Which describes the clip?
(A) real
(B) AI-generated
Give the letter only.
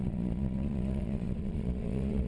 B